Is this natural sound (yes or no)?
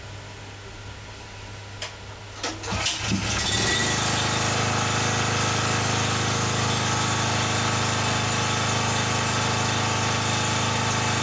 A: yes